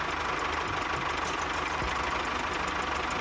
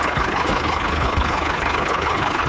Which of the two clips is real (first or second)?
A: first